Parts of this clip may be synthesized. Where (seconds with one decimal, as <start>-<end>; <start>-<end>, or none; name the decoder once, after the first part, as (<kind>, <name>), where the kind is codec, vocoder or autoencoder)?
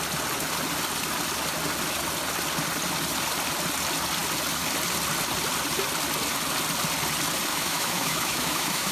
7.5-8.9 (autoencoder, DAC-VAE)